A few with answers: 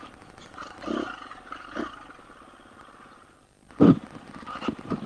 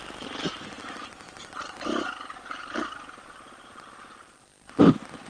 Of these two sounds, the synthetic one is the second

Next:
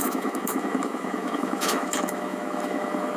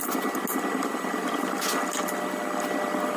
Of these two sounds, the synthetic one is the first